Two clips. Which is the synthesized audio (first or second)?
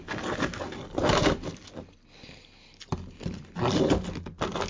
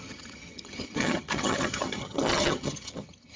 second